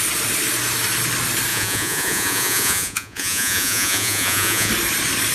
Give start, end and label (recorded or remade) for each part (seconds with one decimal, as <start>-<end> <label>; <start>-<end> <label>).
0.0-1.5 recorded; 1.5-4.7 remade; 4.7-5.3 recorded